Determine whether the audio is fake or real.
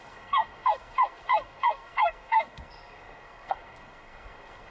fake